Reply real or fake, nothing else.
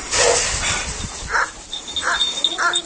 real